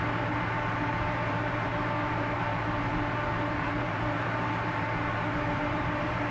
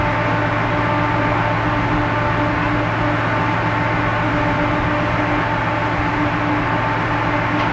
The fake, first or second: first